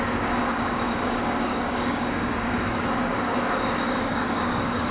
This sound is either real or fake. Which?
fake